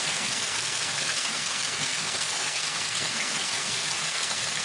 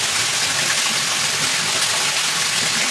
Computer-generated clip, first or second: first